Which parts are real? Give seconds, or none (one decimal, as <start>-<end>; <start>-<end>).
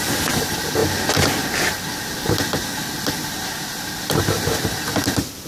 0.0-5.5